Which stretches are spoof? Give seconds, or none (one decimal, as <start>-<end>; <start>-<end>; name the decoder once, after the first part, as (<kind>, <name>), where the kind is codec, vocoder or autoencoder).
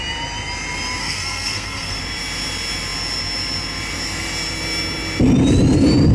1.0-2.0 (codec, SNAC)